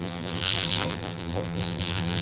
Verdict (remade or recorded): remade